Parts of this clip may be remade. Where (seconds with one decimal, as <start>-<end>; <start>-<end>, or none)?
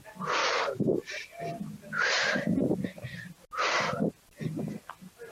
0.4-1.1